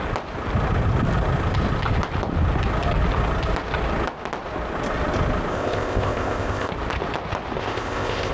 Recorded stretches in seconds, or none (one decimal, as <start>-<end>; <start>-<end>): 0.0-5.5; 6.7-7.6